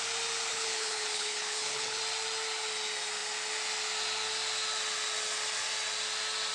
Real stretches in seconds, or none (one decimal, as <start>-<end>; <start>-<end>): 0.0-0.5; 2.0-6.5